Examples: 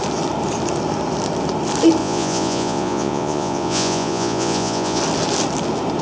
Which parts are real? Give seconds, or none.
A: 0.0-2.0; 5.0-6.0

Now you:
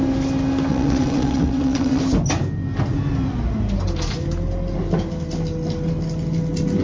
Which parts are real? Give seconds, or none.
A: 0.0-0.7; 2.0-6.8

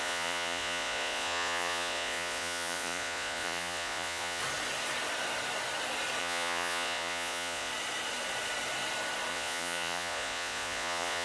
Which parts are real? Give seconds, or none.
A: 4.4-6.2; 7.7-9.3

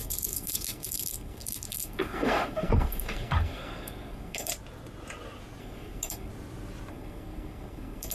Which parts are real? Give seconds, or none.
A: 4.5-5.6; 6.3-6.9

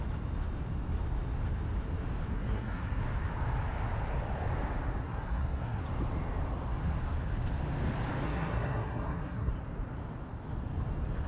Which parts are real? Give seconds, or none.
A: 0.0-2.3; 3.0-5.0; 5.8-8.2; 9.5-11.3

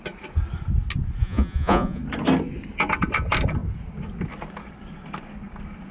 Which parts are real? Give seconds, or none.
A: 0.0-1.2; 2.0-5.9